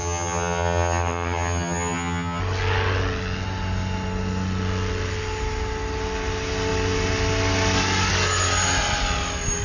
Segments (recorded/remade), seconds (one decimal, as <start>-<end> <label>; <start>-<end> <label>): 0.0-2.4 remade; 2.4-9.6 recorded